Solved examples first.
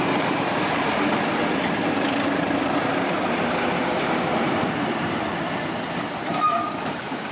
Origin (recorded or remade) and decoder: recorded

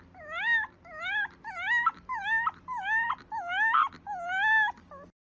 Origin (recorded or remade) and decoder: recorded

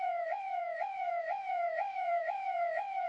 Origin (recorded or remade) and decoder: remade, vocoder, WaveNeXt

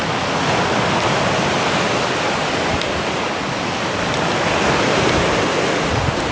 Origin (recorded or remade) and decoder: recorded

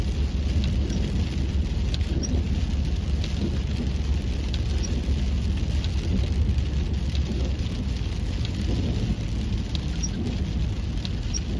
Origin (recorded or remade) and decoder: recorded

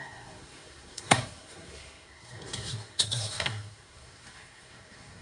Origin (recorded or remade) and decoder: remade, codec, SNAC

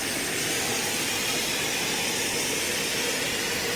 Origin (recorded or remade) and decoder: remade, vocoder, BigVGAN v2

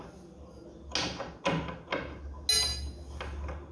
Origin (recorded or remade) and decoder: recorded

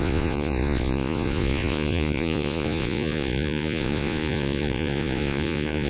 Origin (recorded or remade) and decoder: remade, vocoder, Vocos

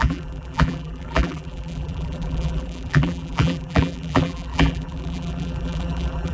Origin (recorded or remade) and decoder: remade, vocoder, BigVGAN v2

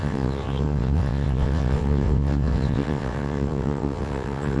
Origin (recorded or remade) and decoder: remade, vocoder, WaveNeXt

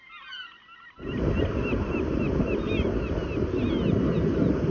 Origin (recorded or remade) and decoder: recorded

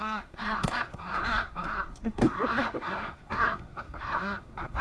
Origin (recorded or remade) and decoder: remade, codec, SNAC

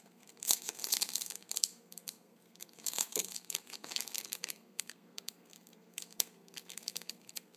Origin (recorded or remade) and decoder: remade, codec, SNAC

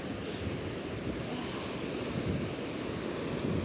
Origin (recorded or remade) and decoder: recorded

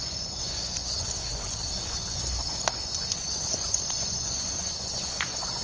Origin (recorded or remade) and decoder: remade, vocoder, Vocos